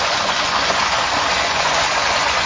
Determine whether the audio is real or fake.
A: fake